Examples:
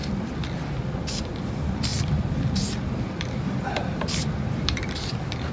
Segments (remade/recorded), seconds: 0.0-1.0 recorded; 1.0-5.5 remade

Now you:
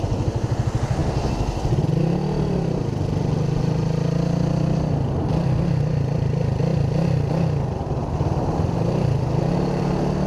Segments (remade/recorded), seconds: 0.0-10.3 recorded

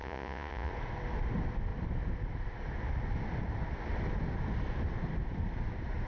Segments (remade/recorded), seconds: 0.0-0.7 remade; 0.7-6.1 recorded

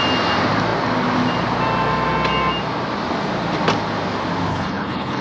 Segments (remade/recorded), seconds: 0.0-4.5 recorded; 4.5-5.2 remade

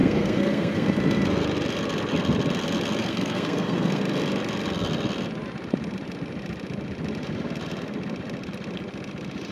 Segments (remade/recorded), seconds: 0.0-0.9 remade; 0.9-3.0 recorded; 3.0-4.0 remade; 4.0-9.5 recorded

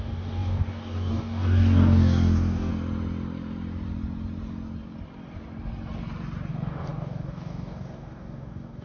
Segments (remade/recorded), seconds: 0.0-2.7 remade; 2.7-6.5 recorded; 6.5-8.8 remade

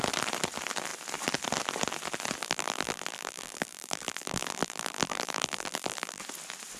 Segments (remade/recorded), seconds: 0.0-2.4 recorded; 2.4-6.2 remade; 6.2-6.8 recorded